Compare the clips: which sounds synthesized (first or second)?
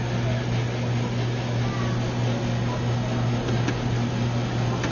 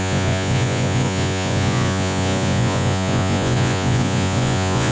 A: second